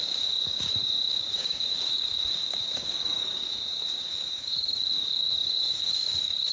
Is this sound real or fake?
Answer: fake